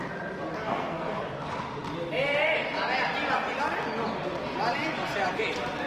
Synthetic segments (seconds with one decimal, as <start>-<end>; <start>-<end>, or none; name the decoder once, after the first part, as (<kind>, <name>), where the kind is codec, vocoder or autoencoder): 0.7-1.2 (codec, SNAC)